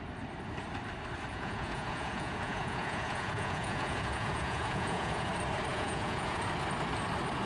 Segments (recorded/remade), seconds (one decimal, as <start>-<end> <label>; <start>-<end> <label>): 0.0-1.3 recorded; 1.3-5.3 remade; 5.3-5.7 recorded; 5.7-6.4 remade; 6.4-7.5 recorded